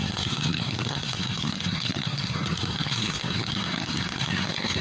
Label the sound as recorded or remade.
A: remade